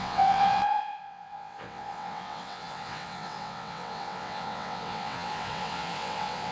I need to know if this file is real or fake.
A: fake